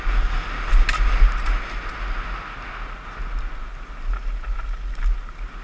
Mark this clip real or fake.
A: real